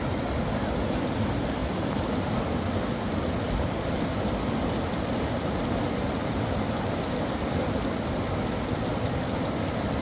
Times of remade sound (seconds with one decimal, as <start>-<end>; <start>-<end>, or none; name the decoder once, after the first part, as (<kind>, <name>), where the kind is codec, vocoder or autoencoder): none